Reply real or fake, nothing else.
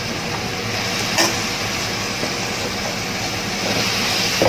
real